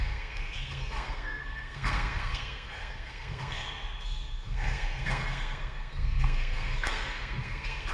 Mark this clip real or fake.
fake